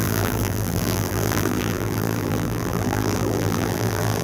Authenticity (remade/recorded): remade